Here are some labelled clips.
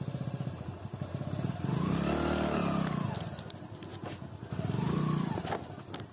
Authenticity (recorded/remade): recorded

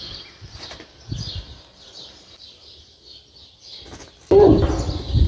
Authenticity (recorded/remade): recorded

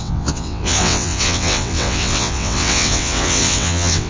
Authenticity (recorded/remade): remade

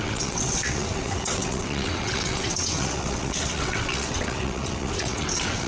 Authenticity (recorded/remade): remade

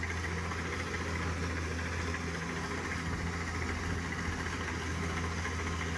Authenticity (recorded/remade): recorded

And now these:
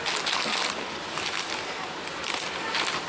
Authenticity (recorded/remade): recorded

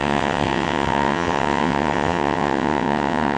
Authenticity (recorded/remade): remade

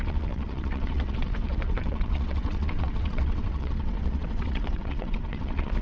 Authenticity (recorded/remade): remade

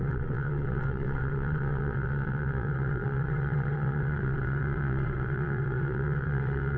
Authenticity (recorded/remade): remade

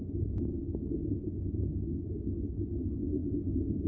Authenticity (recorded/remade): recorded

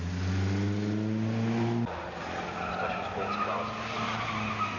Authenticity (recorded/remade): recorded